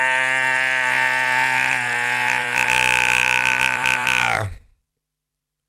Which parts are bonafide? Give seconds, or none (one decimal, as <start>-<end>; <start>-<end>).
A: 0.0-2.4